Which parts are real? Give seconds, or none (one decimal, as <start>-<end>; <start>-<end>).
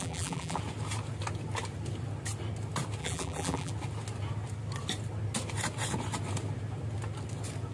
0.6-3.0; 3.7-7.7